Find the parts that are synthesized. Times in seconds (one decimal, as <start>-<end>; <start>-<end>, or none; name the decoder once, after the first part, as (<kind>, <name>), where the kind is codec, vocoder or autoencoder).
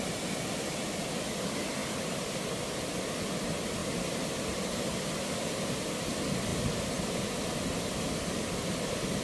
1.8-2.4 (vocoder, BigVGAN v2); 3.8-4.8; 6.5-8.1